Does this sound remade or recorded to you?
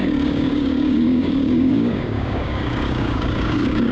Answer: remade